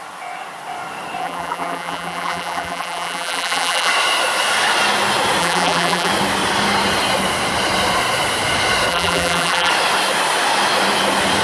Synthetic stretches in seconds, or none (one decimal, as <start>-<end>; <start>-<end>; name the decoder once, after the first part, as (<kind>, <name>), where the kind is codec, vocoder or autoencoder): 1.2-3.9 (vocoder, BigVGAN v2); 5.4-6.1; 8.9-9.7